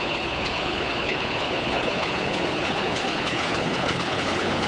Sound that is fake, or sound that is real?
fake